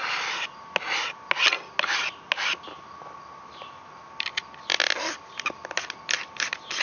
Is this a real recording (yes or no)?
yes